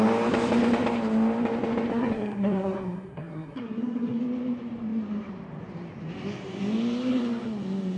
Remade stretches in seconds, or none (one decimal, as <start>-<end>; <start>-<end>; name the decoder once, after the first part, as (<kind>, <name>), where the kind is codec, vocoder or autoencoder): 1.9-4.2 (codec, SNAC)